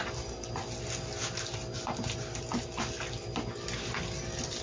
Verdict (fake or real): real